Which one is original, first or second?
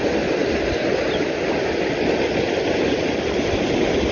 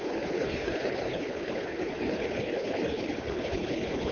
first